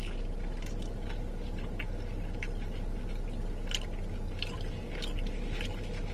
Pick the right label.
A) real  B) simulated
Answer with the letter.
A